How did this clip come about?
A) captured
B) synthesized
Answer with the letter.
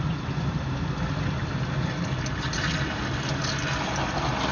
A